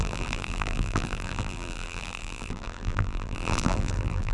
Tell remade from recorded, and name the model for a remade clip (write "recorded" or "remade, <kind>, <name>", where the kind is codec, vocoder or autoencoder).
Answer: remade, vocoder, BigVGAN v2